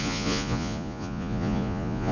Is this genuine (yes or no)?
no